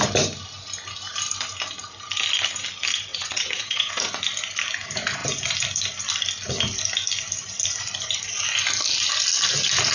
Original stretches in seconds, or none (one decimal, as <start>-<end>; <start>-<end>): 0.0-3.1; 3.9-9.9